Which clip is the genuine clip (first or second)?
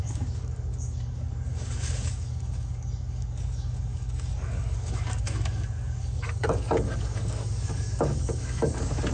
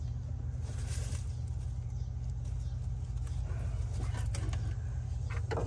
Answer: second